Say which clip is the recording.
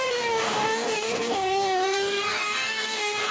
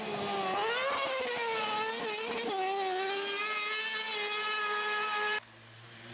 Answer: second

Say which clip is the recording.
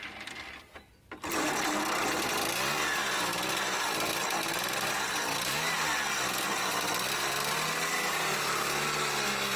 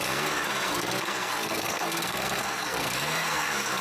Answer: first